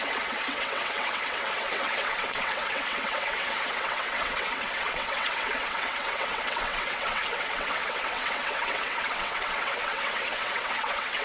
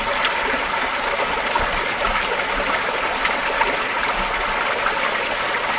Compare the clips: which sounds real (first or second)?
second